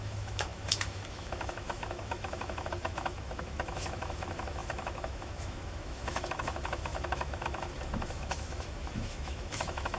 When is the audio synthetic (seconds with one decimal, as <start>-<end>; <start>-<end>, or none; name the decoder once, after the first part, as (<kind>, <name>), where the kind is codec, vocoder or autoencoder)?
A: 0.0-10.0 (autoencoder, DAC-VAE)

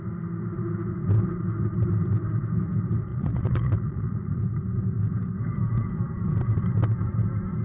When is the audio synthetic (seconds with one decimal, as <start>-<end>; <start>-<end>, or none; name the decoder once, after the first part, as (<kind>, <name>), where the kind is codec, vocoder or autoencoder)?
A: 3.1-4.4 (vocoder, Vocos)

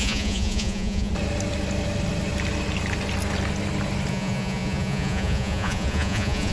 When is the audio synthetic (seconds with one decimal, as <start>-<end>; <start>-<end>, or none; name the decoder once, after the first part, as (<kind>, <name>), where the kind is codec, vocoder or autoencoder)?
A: 0.0-1.1 (vocoder, Vocos); 4.1-6.5

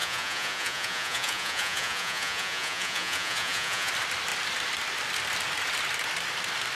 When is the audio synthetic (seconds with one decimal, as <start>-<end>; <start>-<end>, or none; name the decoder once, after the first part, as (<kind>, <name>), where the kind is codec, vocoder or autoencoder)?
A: 0.0-3.9 (vocoder, Vocos)

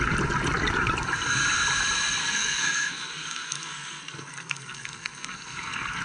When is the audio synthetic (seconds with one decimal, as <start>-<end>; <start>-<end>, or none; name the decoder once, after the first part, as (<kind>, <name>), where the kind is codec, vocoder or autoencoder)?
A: 2.2-6.0 (codec, SNAC)